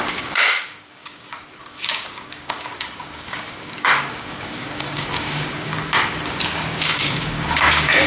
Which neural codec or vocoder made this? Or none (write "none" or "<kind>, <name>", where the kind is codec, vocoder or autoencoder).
codec, DAC